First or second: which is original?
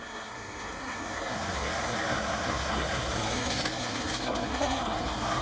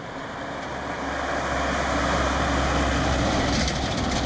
second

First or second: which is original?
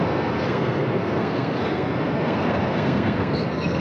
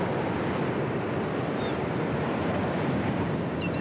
second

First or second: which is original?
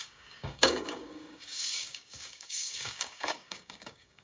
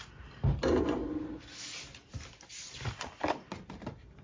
second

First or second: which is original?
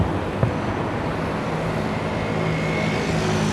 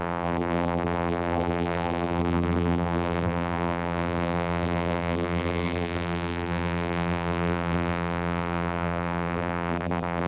first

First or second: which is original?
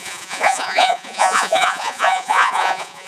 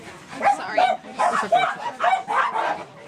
second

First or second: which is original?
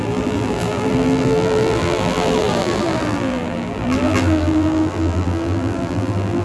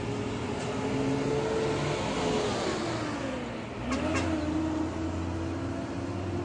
second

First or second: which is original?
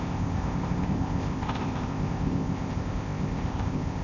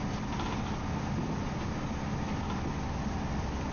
second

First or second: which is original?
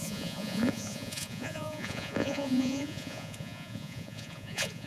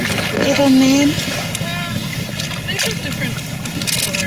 second